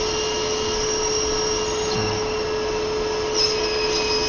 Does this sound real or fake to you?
real